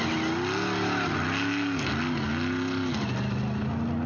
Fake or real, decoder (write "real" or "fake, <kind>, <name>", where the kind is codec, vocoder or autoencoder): real